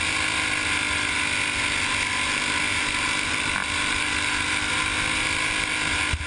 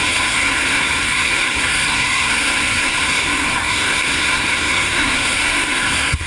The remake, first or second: second